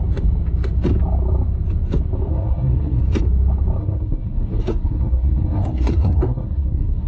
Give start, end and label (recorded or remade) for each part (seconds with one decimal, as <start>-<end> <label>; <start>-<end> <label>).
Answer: 0.0-2.3 recorded; 2.3-3.0 remade; 3.0-3.8 recorded; 3.8-7.1 remade

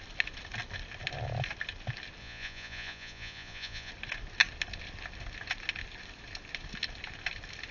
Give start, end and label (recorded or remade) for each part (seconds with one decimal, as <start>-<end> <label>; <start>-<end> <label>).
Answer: 0.0-2.2 recorded; 2.2-3.9 remade; 3.9-7.7 recorded

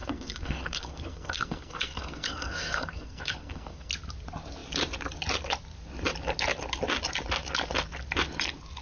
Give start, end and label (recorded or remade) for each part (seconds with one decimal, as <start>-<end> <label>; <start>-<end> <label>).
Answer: 0.0-3.9 remade; 3.9-8.8 recorded

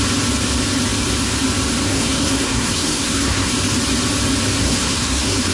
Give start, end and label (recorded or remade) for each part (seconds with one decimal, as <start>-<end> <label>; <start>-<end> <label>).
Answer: 0.0-1.9 recorded; 1.9-3.5 remade; 3.5-4.6 recorded; 4.6-5.5 remade

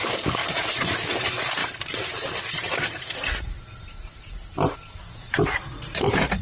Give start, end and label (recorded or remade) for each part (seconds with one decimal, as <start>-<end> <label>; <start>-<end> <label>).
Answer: 0.0-6.4 recorded

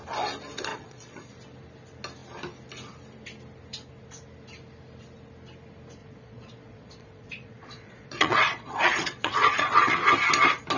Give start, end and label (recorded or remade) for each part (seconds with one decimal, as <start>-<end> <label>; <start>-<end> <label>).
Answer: 0.0-0.7 recorded; 0.7-1.3 remade; 1.3-6.0 recorded; 6.0-9.9 remade; 9.9-10.8 recorded

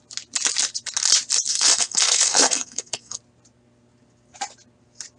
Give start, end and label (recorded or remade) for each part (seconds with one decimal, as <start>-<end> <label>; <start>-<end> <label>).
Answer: 0.0-1.5 recorded; 1.5-3.2 remade; 3.2-5.2 recorded